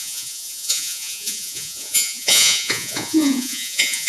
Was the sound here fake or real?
fake